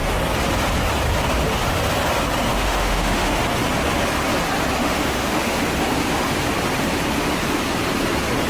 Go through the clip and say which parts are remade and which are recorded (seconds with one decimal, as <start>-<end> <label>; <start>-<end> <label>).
0.0-2.5 recorded; 2.5-3.4 remade; 3.4-4.8 recorded; 4.8-5.6 remade; 5.6-8.5 recorded